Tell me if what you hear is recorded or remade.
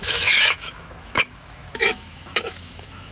remade